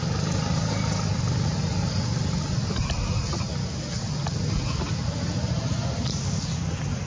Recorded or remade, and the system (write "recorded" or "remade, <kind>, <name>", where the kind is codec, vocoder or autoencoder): recorded